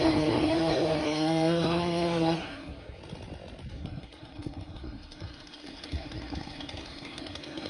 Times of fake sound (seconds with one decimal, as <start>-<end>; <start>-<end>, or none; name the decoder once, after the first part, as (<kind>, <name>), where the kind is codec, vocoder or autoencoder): 0.0-3.0 (codec, SNAC); 3.7-7.7